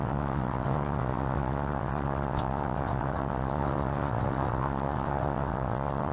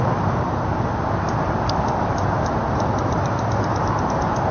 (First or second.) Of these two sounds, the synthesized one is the first